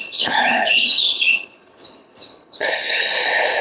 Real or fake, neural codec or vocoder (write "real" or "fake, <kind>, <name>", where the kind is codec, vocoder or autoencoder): fake, codec, HILCodec